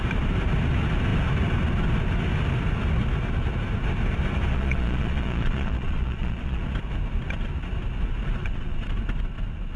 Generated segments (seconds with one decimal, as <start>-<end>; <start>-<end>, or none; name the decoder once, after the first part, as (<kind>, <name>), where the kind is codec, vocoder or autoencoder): 4.5-6.6 (vocoder, Vocos); 8.4-8.9